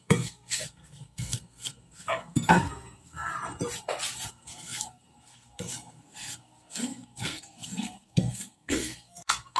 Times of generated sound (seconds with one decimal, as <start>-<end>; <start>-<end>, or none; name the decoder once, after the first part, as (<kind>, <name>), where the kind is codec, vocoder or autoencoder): 0.0-3.3 (codec, SNAC); 4.3-9.6